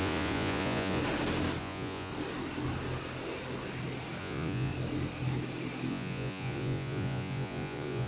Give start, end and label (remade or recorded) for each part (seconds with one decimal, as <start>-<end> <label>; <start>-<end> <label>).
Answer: 0.0-1.0 remade; 1.0-1.6 recorded; 1.6-2.1 remade; 2.1-4.2 recorded; 4.2-4.7 remade; 4.7-5.9 recorded; 5.9-8.1 remade